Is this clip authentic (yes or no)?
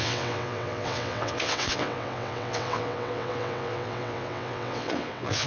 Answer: no